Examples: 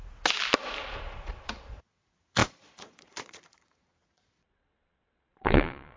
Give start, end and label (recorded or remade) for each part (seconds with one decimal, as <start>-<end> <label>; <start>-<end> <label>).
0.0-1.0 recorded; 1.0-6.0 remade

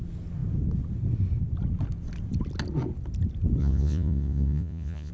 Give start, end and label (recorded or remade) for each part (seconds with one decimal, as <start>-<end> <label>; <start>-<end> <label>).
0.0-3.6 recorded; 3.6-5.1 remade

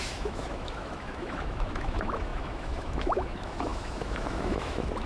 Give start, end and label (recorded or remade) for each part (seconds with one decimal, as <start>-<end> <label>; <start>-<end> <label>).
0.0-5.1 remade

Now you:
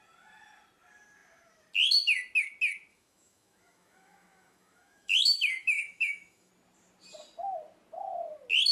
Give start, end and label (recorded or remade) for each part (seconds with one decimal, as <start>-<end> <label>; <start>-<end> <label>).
0.0-2.9 recorded; 2.9-6.5 remade; 6.5-8.7 recorded

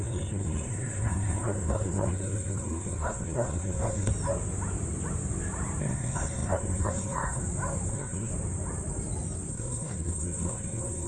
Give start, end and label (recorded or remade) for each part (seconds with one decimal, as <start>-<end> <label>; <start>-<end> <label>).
0.0-4.1 remade; 4.1-5.8 recorded; 5.8-7.4 remade; 7.4-7.9 recorded; 7.9-8.3 remade; 8.3-9.5 recorded; 9.5-11.1 remade